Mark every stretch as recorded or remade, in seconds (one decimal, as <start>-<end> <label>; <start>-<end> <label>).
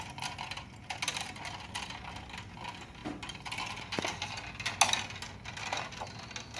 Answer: 0.0-6.6 recorded